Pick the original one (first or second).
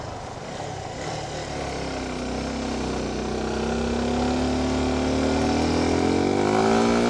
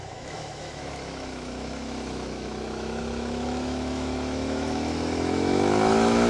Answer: first